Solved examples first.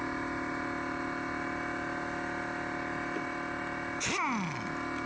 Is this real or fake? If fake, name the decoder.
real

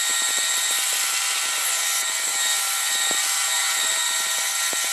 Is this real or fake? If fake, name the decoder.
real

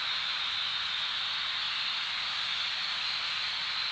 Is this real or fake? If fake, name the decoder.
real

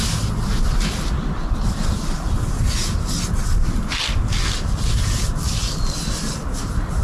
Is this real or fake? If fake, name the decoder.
real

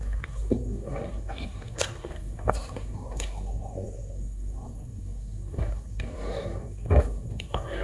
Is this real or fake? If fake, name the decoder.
fake, codec, SNAC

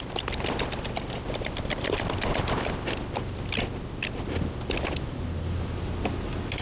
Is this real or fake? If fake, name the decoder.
real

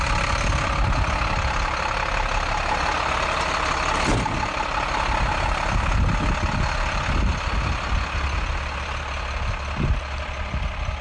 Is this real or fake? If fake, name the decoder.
real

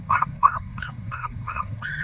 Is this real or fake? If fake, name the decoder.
fake, codec, SNAC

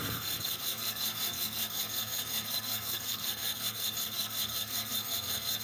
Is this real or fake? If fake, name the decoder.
fake, codec, SNAC